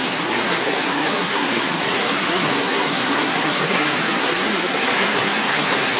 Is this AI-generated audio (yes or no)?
yes